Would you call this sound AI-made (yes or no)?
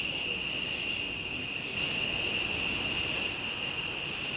no